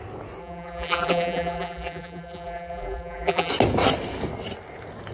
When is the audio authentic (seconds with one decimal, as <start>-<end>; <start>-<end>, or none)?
0.0-0.4; 3.5-5.1